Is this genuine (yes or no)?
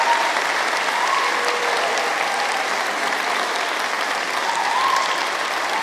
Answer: yes